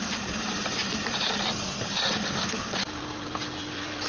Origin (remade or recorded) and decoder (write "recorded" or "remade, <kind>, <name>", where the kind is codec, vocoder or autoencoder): recorded